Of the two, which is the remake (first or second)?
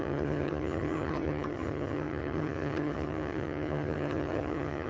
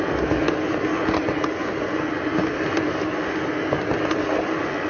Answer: first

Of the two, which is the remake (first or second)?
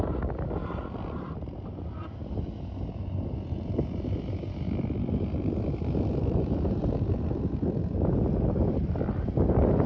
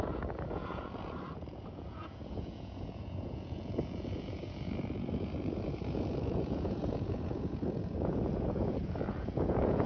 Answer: second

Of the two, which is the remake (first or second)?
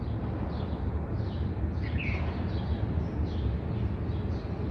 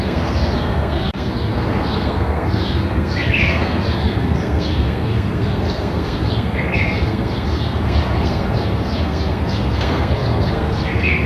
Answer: second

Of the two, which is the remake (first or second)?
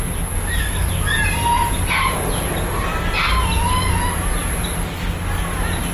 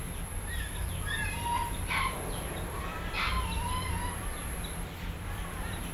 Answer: second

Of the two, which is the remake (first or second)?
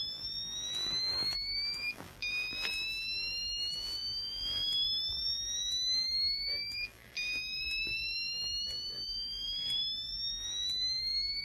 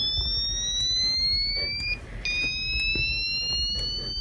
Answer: first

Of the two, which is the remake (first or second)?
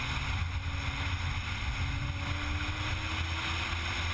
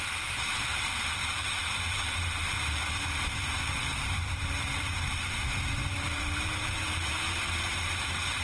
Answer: second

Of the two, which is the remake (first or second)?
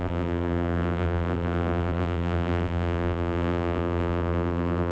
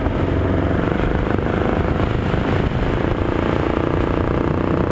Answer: first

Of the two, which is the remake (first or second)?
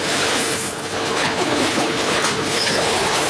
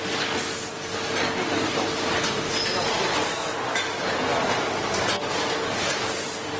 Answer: first